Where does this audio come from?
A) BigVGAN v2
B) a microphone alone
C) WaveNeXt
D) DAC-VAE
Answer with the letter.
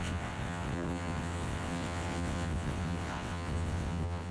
C